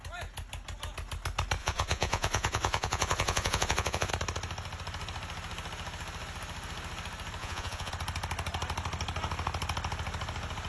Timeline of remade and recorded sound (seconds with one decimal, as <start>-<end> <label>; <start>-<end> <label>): 0.0-1.6 recorded; 1.6-4.1 remade; 4.1-7.4 recorded; 7.4-7.9 remade; 7.9-10.7 recorded